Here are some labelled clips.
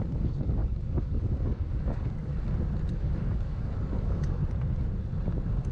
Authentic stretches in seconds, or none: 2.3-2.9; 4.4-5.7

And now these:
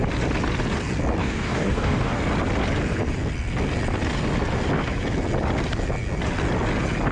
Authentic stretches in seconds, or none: 0.0-1.2; 2.2-7.1

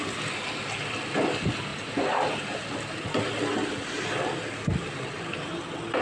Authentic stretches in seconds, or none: 0.0-6.0

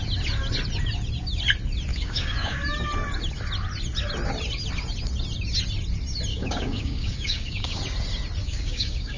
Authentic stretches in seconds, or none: 0.0-1.9; 2.6-6.3; 7.8-8.4